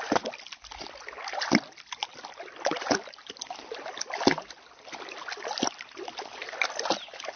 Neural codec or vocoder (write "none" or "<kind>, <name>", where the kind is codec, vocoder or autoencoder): none